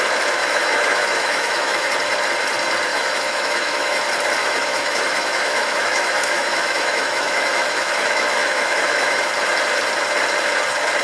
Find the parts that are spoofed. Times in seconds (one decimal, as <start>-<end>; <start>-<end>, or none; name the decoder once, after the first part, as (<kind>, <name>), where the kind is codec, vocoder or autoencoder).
0.4-1.9 (autoencoder, DAC-VAE); 2.9-4.0; 4.4-9.3